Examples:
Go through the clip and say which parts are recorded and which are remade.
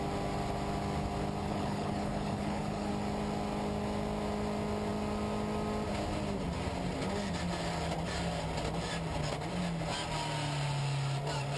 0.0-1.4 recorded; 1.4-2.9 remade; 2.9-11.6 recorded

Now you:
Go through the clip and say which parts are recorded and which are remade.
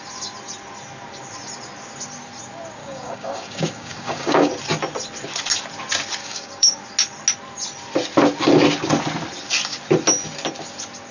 0.0-2.8 recorded; 2.8-4.5 remade; 4.5-6.2 recorded; 6.2-6.8 remade; 6.8-11.1 recorded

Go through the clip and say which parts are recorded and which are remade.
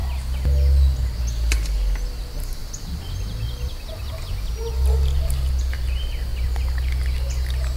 0.0-7.8 recorded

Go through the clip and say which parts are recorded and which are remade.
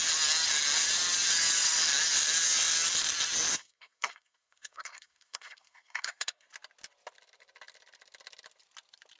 0.0-3.5 recorded; 3.5-6.5 remade; 6.5-9.2 recorded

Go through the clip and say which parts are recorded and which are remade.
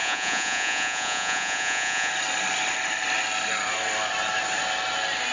0.0-2.1 remade; 2.1-5.3 recorded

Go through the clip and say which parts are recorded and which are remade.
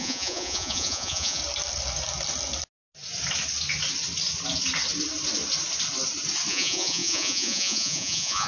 0.0-1.4 remade; 1.4-6.5 recorded; 6.5-8.5 remade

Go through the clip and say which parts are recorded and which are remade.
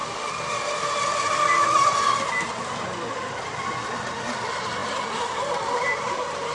0.0-6.5 recorded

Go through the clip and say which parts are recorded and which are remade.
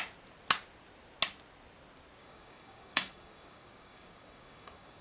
0.0-2.2 recorded; 2.2-5.0 remade